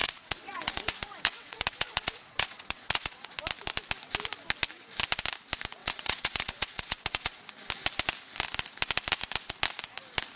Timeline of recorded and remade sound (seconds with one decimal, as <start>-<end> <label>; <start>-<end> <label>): 0.0-3.3 remade; 3.3-5.8 recorded; 5.8-7.4 remade; 7.4-10.4 recorded